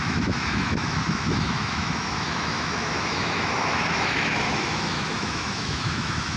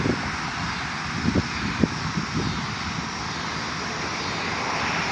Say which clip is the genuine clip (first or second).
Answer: second